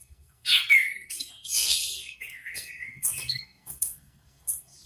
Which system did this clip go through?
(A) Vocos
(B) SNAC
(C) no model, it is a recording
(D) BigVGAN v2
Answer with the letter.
B